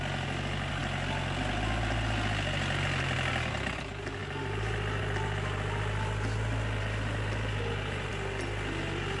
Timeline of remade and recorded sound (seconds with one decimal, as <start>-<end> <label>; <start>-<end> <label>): 0.0-9.2 recorded